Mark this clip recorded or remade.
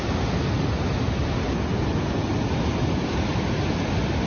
recorded